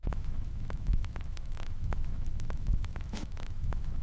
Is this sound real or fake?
fake